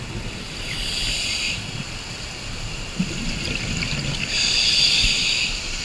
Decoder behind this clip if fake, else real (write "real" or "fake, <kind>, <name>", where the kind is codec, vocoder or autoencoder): real